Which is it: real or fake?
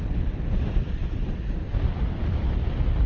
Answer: fake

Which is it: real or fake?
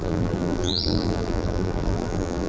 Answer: fake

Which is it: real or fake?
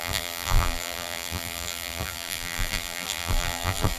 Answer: fake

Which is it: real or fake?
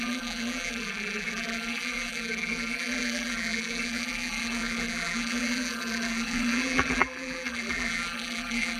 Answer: fake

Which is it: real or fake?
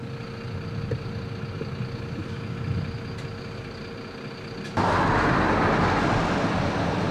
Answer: real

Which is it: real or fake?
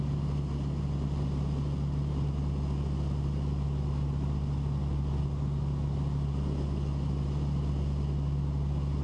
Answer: real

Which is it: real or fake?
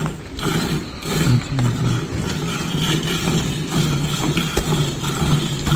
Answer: real